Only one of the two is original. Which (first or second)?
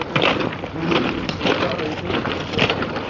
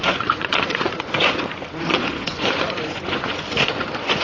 first